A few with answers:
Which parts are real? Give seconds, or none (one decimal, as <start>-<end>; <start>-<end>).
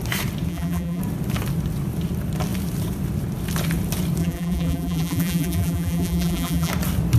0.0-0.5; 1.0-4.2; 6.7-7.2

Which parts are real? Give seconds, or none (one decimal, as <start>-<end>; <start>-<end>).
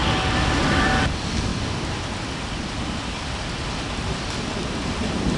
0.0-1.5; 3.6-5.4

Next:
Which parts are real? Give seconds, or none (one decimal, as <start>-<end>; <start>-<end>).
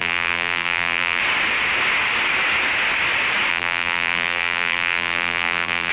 1.2-3.5